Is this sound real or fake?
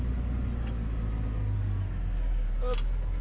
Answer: real